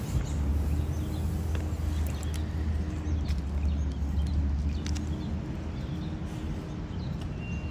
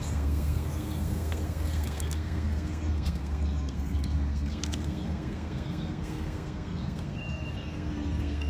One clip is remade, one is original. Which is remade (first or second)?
second